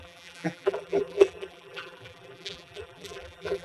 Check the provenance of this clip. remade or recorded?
remade